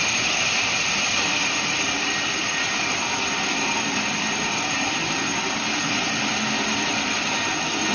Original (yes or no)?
no